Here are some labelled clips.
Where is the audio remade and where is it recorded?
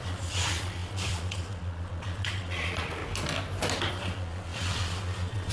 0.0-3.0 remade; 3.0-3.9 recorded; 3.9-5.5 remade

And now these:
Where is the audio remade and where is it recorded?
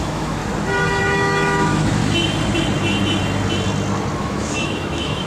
0.0-0.4 remade; 0.4-1.0 recorded; 1.0-2.0 remade; 2.0-4.2 recorded; 4.2-5.3 remade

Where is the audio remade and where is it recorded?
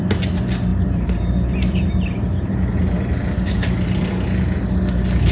0.0-0.7 recorded; 0.7-3.6 remade; 3.6-5.3 recorded